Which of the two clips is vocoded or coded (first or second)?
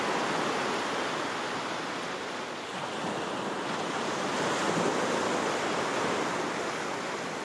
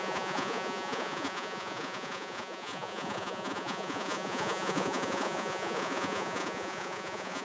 second